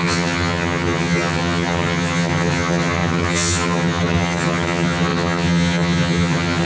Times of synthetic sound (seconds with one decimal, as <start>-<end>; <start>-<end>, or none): 0.0-6.6